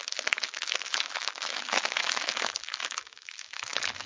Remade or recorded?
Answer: remade